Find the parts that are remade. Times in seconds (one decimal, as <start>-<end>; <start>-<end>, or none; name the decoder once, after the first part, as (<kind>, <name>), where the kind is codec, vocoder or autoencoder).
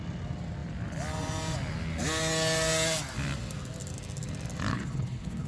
4.7-5.5 (codec, HILCodec)